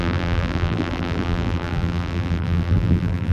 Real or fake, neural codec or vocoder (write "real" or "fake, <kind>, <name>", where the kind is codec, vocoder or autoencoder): fake, vocoder, BigVGAN v2